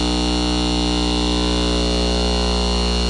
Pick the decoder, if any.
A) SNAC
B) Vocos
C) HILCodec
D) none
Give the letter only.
D